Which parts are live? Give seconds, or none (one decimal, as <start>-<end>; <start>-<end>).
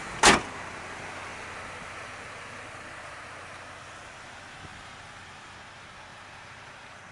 0.0-4.7; 5.6-6.1